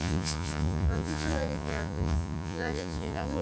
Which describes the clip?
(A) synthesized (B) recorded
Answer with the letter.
A